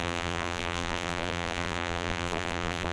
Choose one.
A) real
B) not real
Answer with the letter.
B